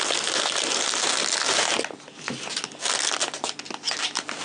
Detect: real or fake real